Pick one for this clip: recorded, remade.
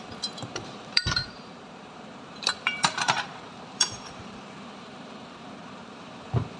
remade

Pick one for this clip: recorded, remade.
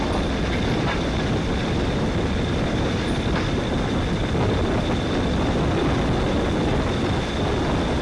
recorded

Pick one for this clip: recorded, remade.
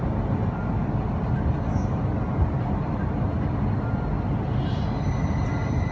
recorded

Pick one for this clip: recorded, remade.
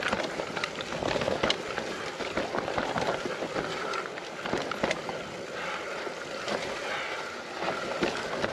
recorded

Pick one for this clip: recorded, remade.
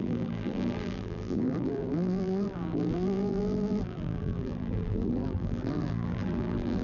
remade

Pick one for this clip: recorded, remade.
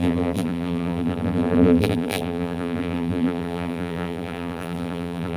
remade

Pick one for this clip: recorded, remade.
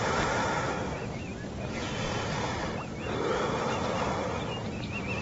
recorded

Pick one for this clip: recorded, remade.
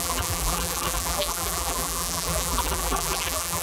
remade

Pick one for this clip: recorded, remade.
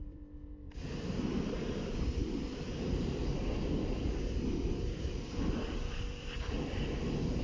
remade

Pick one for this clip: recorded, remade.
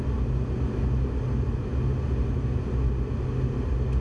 recorded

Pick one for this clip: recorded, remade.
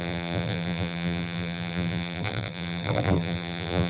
remade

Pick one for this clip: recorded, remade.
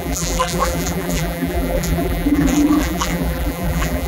remade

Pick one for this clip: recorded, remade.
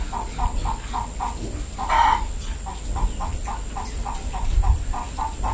recorded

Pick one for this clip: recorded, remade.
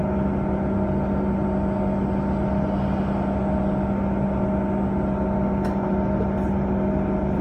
recorded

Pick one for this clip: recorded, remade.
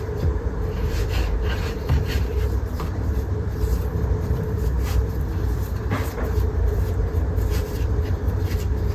remade